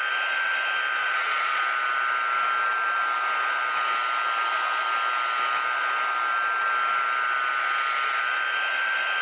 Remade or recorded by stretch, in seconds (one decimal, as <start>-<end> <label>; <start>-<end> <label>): 0.0-1.0 recorded; 1.0-1.6 remade; 1.6-9.2 recorded